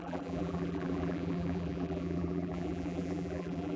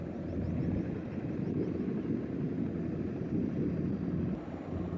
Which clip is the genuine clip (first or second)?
second